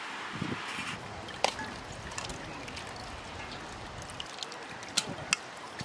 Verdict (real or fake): real